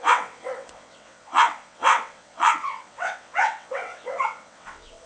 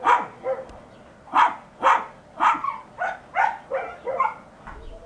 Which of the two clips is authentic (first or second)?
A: second